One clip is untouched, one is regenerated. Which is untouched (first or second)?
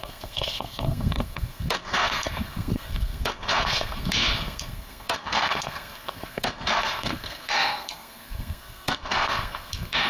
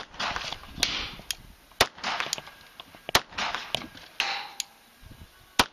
second